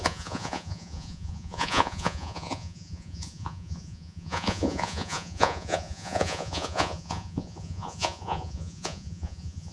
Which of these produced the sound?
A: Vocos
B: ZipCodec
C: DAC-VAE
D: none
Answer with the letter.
A